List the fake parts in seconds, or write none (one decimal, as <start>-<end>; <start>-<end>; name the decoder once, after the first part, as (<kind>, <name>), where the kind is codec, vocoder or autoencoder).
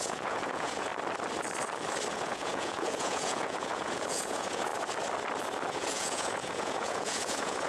0.0-0.9 (vocoder, Vocos); 2.1-4.7; 5.7-7.7